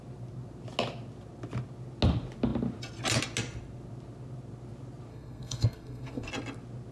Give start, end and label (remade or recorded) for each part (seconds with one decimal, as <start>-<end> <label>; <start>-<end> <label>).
0.0-5.1 recorded; 5.1-6.3 remade; 6.3-6.9 recorded